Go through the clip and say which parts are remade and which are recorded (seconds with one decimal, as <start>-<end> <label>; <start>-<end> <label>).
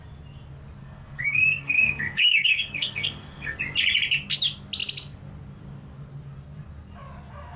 0.0-0.8 recorded; 0.8-3.6 remade; 3.6-7.6 recorded